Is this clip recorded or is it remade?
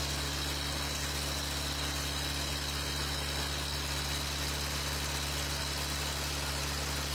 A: recorded